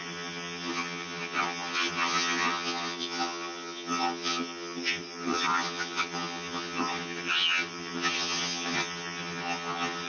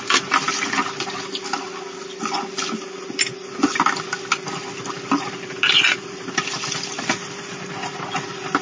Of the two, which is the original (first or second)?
second